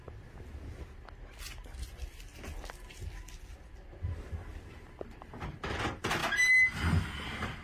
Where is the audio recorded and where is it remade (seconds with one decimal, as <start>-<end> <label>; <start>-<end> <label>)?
0.0-7.6 recorded